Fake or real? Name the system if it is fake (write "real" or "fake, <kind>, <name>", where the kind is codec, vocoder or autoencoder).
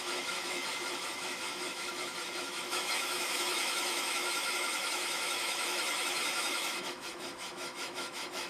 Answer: fake, autoencoder, DAC-VAE